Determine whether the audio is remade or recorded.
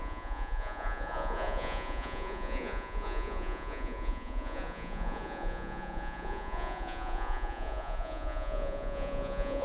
remade